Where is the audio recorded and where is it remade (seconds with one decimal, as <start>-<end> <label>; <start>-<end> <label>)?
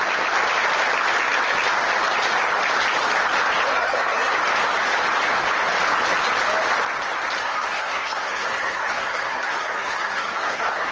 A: 0.0-3.7 recorded; 3.7-4.3 remade; 4.3-7.4 recorded; 7.4-10.9 remade